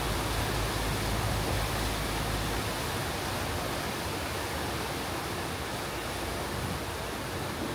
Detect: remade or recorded recorded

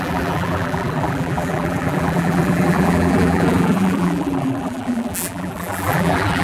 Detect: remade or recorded remade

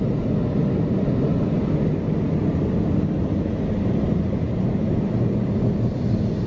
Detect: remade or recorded recorded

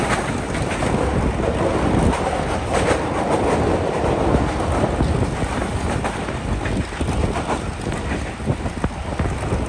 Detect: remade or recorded recorded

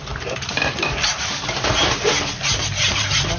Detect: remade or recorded remade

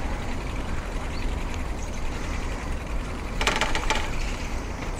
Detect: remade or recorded remade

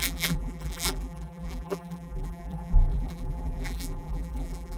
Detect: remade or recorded remade